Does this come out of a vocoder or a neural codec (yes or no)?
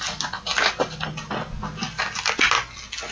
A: no